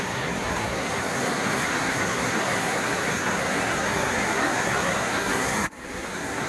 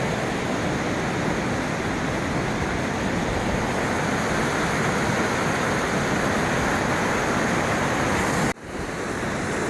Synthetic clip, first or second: first